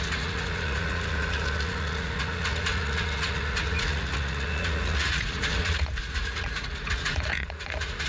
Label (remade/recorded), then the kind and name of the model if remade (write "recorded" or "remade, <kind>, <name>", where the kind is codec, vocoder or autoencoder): remade, vocoder, Vocos